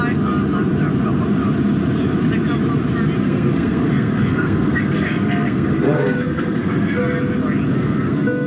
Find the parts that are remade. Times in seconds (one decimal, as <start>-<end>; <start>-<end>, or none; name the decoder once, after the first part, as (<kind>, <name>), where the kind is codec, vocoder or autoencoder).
3.2-7.0 (codec, SNAC); 7.7-8.5